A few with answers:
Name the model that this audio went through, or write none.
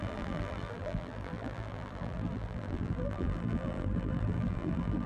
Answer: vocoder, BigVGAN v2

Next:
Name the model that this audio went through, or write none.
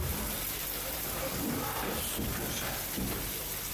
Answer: vocoder, BigVGAN v2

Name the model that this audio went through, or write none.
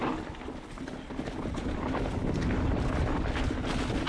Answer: none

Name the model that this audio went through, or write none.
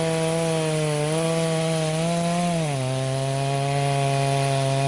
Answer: none